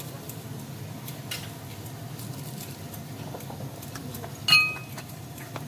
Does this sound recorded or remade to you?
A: recorded